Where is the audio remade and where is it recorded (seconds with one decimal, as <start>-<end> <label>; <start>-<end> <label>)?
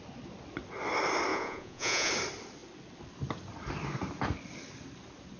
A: 0.0-1.3 recorded; 1.3-2.1 remade; 2.1-5.4 recorded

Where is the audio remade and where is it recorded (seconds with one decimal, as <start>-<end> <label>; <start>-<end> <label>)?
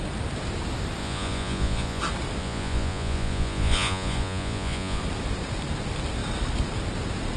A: 0.0-1.0 recorded; 1.0-2.0 remade; 2.0-2.4 recorded; 2.4-5.0 remade; 5.0-7.4 recorded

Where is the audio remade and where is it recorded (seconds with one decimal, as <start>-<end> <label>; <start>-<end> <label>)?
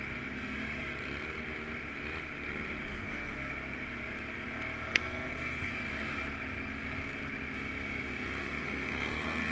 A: 0.0-2.9 recorded; 2.9-3.5 remade; 3.5-4.9 recorded; 4.9-5.7 remade; 5.7-8.4 recorded; 8.4-9.5 remade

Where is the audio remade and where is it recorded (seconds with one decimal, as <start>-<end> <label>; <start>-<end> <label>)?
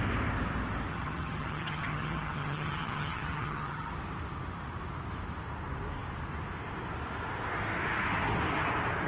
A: 0.0-0.9 recorded; 0.9-3.9 remade; 3.9-9.1 recorded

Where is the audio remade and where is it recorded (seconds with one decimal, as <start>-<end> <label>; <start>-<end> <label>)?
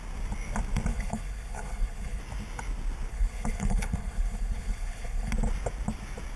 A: 0.0-0.9 recorded; 0.9-2.2 remade; 2.2-3.1 recorded; 3.1-5.3 remade; 5.3-6.4 recorded